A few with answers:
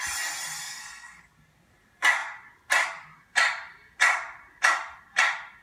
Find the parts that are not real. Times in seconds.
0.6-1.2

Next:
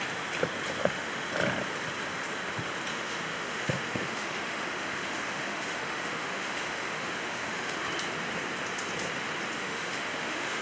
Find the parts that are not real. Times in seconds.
0.8-1.3; 2.9-7.8; 9.6-10.6

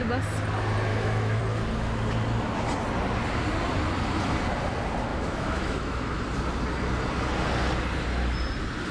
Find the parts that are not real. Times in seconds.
0.9-1.4; 5.1-6.2

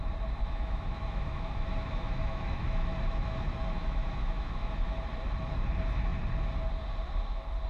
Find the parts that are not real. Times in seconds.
0.4-5.0

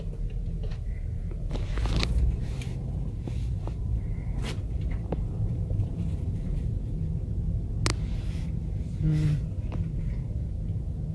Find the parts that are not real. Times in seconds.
0.7-3.1; 3.5-6.7

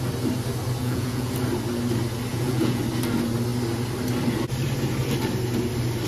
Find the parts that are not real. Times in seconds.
0.8-1.3; 2.3-2.8

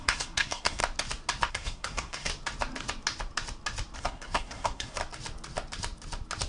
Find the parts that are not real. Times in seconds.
0.0-0.8; 1.5-2.3; 4.0-5.0

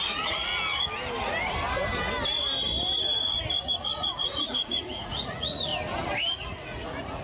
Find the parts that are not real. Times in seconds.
0.0-0.5; 3.2-5.7; 6.3-7.2